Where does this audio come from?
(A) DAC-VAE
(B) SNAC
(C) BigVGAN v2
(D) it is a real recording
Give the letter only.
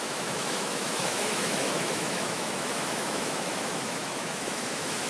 A